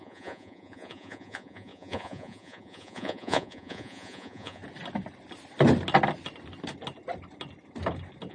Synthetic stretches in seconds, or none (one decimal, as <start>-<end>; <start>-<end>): 0.0-4.6